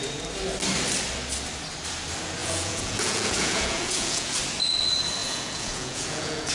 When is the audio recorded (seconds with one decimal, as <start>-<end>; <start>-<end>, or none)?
0.0-2.4; 4.4-5.2